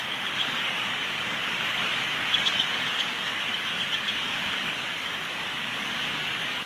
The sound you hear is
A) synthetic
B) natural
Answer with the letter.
A